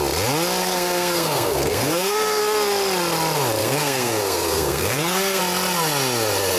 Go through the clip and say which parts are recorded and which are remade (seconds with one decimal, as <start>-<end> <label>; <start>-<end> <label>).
0.0-0.6 recorded; 0.6-2.4 remade; 2.4-3.6 recorded; 3.6-5.4 remade; 5.4-6.6 recorded